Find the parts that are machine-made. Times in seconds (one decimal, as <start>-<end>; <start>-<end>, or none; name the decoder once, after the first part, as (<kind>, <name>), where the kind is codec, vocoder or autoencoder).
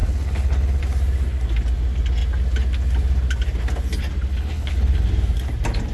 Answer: 0.0-0.8 (codec, HILCodec); 4.3-5.1